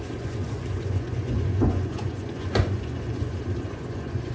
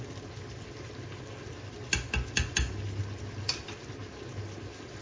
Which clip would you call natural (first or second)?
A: second